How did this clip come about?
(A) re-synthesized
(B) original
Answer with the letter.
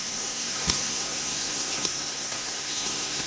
A